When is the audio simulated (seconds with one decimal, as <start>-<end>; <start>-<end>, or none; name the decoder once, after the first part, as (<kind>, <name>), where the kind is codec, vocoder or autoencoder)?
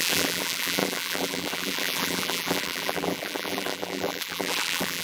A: 0.0-5.0 (vocoder, BigVGAN v2)